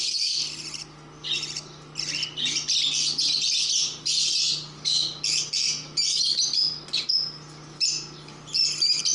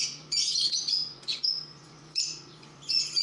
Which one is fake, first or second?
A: second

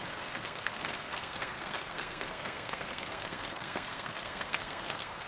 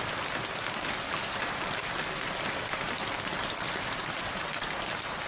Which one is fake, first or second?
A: first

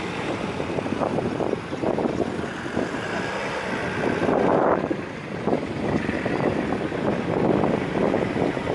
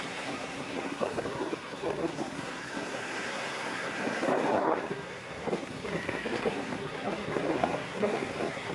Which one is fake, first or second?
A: second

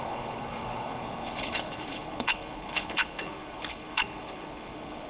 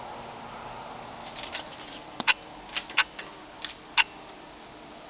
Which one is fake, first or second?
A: first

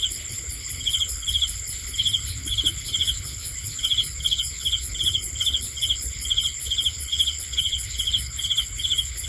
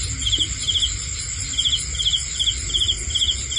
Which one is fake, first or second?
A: first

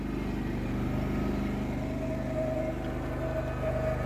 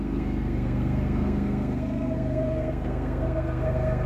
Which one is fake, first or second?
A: second